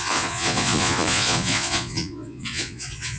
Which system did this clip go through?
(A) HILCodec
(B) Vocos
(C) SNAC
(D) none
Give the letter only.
B